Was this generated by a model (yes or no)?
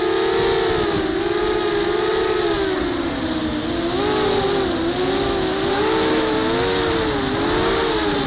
no